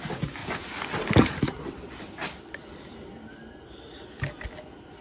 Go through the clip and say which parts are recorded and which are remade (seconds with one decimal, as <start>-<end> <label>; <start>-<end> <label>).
0.0-0.4 recorded; 0.4-1.9 remade; 1.9-5.0 recorded